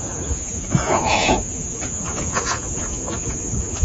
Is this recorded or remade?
remade